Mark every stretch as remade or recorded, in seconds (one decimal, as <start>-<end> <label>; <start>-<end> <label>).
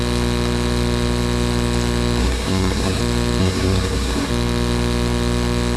0.0-2.2 recorded; 2.2-3.0 remade; 3.0-3.4 recorded; 3.4-4.3 remade; 4.3-5.8 recorded